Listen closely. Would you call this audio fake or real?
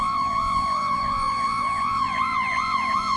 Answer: fake